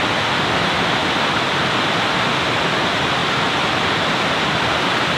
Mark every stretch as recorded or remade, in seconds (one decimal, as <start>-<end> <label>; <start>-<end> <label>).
0.0-1.0 recorded; 1.0-2.6 remade; 2.6-5.2 recorded